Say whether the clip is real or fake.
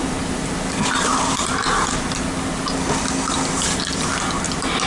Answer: real